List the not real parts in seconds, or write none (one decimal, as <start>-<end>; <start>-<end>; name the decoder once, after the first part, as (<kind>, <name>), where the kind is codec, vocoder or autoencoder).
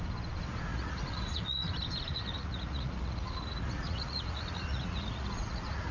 0.7-1.7 (vocoder, Vocos); 2.1-5.9